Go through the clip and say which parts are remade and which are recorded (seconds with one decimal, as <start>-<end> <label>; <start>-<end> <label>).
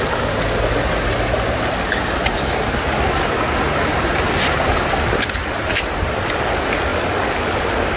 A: 0.0-8.0 recorded